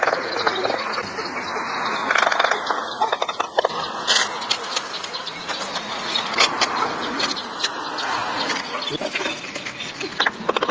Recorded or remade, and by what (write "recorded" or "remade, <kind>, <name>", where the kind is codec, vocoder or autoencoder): recorded